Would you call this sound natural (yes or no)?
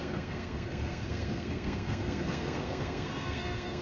no